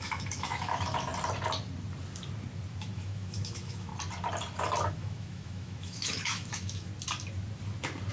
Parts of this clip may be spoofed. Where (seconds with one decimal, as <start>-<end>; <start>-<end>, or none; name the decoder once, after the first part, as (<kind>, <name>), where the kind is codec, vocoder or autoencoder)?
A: 0.0-1.1 (autoencoder, DAC-VAE); 2.8-3.9; 4.9-6.9